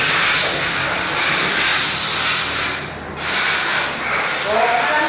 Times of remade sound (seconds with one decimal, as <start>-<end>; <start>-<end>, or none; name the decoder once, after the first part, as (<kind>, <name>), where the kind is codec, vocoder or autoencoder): none